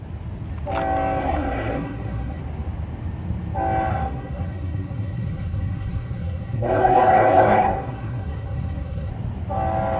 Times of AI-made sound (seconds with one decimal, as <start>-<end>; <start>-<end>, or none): 1.2-2.4; 3.9-9.1